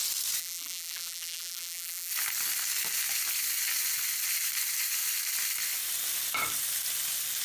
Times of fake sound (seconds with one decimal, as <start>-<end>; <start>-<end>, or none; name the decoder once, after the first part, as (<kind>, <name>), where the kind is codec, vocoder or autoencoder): 0.4-2.1 (vocoder, BigVGAN v2)